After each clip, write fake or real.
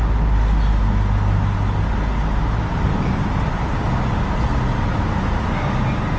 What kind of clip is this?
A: real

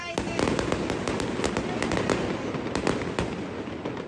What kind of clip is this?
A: real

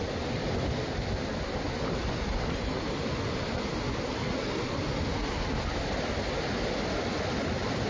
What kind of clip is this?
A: real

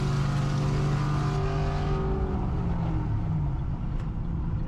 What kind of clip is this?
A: real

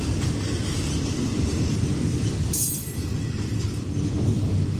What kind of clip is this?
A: real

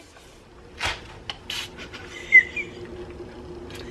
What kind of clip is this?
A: real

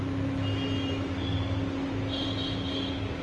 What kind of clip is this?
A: real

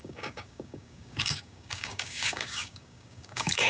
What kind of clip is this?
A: fake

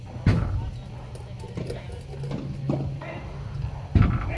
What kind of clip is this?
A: real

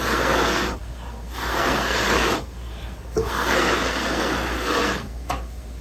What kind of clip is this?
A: fake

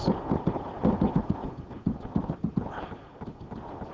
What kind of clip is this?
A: real